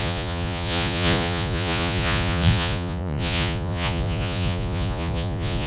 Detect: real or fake fake